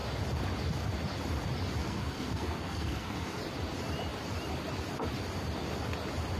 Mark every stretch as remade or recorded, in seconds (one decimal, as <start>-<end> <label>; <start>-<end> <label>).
0.0-1.8 recorded; 1.8-3.4 remade; 3.4-6.4 recorded